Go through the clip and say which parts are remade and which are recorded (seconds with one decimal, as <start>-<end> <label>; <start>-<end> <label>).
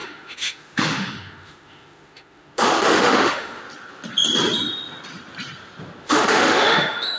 0.0-3.6 remade; 3.6-6.0 recorded; 6.0-7.2 remade